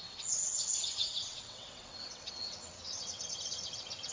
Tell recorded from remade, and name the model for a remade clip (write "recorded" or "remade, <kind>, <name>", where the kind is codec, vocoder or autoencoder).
remade, vocoder, WaveNeXt